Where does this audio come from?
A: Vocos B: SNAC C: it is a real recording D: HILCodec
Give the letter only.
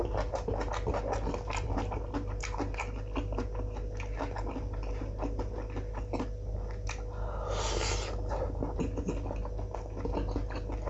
C